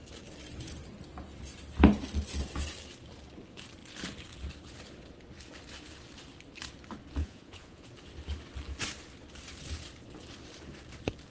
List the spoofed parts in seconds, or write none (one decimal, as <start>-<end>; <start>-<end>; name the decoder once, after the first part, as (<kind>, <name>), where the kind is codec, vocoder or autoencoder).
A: 7.2-7.9 (vocoder, Vocos)